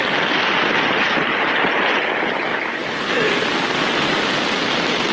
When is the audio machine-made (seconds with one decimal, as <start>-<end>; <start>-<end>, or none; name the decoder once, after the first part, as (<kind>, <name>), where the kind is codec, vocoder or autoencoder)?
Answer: none